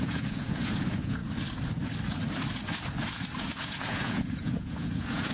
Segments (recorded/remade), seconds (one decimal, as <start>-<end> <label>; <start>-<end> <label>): 0.0-1.2 remade; 1.2-3.4 recorded; 3.4-5.3 remade